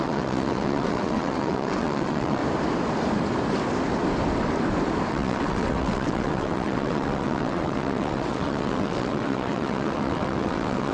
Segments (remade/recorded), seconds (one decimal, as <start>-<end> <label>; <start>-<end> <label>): 0.0-2.4 remade; 2.4-5.1 recorded; 5.1-10.9 remade